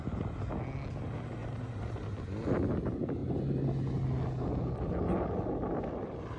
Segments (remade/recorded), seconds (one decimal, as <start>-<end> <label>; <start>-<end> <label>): 0.0-1.4 recorded; 1.4-2.1 remade; 2.1-6.4 recorded